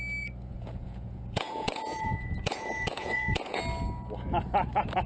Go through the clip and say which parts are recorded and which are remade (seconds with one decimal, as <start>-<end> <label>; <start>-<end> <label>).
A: 0.0-0.5 recorded; 0.5-3.6 remade; 3.6-5.1 recorded